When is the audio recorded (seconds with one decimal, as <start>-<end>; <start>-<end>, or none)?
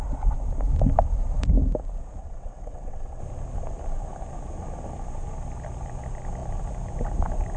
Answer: 0.0-2.2; 3.2-7.6